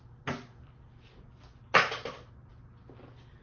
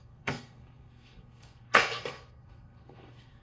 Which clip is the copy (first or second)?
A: second